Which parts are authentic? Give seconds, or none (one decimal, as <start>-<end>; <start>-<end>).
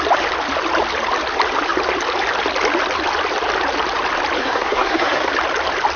0.0-4.4; 5.3-6.0